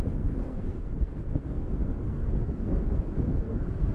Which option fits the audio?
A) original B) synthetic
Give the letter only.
B